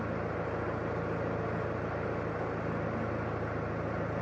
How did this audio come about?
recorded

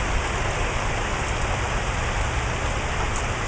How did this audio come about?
recorded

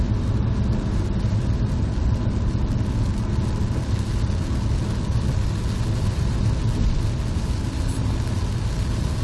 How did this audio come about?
recorded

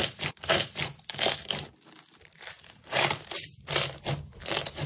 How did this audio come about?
recorded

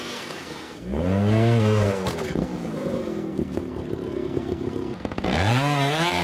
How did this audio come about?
remade